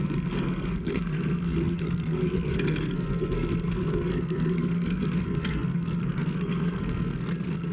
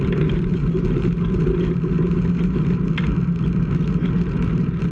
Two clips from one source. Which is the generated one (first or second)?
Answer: first